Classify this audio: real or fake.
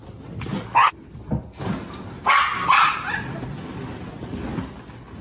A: real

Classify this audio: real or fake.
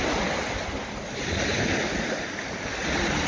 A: real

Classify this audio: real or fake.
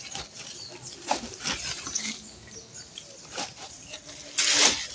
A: real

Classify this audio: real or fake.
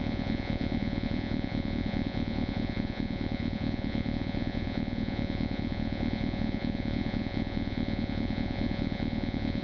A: fake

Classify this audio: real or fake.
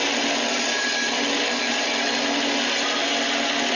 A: real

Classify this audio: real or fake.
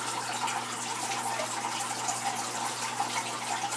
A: real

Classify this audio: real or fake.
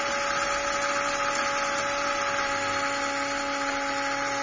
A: real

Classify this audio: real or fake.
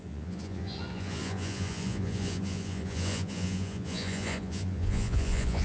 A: fake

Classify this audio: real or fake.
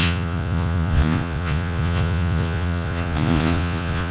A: fake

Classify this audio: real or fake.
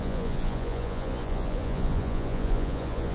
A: fake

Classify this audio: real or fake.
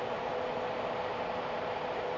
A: real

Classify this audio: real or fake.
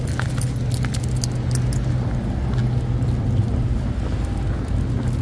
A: real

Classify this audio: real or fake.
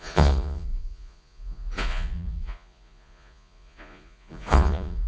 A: fake